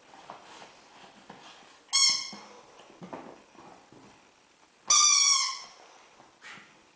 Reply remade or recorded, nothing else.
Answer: recorded